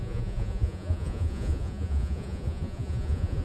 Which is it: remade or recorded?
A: remade